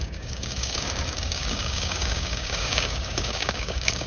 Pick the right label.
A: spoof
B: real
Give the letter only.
A